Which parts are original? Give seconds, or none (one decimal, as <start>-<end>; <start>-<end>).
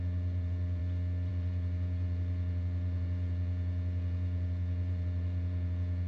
0.8-1.3